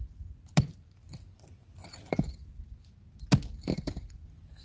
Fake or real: real